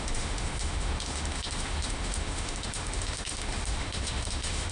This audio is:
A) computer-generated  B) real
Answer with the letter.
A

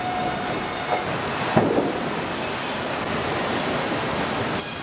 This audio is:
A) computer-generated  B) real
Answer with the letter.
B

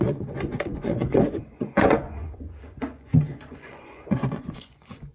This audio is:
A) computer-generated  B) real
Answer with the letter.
A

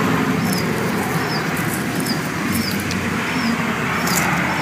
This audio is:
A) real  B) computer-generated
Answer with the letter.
A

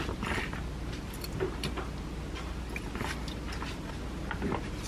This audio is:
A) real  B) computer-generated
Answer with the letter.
A